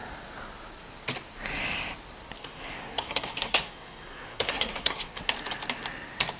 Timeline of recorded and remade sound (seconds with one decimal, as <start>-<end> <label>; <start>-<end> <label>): 0.0-2.4 recorded; 2.4-5.2 remade; 5.2-6.4 recorded